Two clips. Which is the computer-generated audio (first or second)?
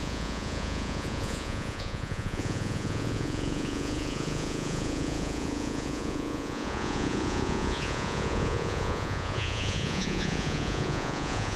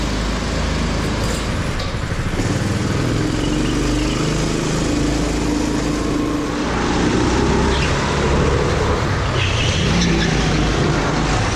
first